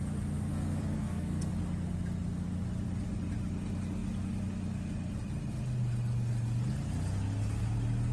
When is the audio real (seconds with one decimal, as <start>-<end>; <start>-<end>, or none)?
0.0-0.5; 1.5-8.1